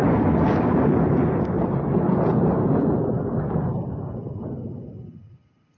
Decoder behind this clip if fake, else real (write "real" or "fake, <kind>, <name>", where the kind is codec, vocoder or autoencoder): real